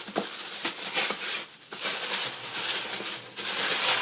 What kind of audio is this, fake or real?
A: real